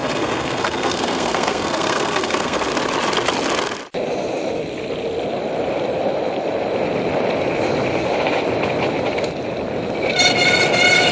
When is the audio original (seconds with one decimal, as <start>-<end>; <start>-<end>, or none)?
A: 2.7-11.1